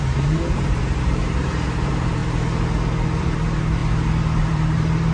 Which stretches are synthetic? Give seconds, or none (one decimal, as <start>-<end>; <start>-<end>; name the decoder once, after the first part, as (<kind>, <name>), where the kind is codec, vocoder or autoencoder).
0.0-2.2 (vocoder, BigVGAN v2); 3.2-3.8; 4.4-5.1